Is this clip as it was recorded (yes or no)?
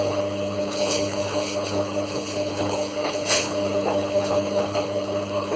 no